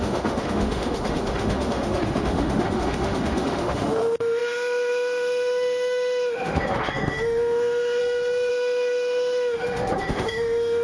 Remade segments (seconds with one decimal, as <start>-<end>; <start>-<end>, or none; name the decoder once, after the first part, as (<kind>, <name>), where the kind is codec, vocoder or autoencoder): 0.0-8.0 (autoencoder, DAC-VAE); 8.5-10.8